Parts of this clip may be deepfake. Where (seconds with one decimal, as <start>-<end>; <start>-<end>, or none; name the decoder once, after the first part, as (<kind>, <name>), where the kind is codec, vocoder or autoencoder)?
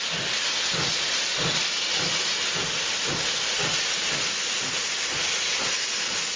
none